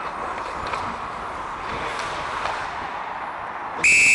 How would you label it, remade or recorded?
recorded